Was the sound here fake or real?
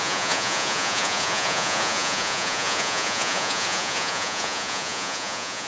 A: fake